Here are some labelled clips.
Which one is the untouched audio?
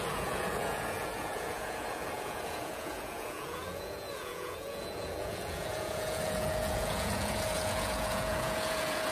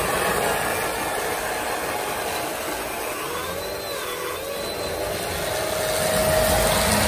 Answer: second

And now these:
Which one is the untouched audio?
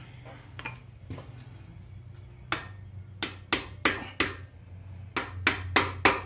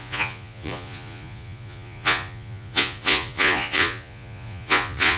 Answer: first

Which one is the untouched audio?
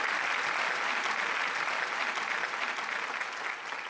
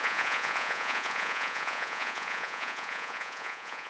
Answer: first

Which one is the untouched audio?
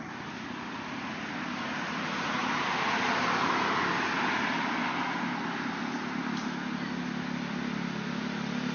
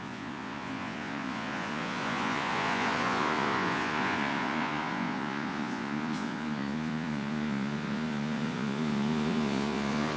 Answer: first